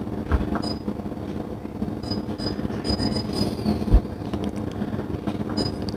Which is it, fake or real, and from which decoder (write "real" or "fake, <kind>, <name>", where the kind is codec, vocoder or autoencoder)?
real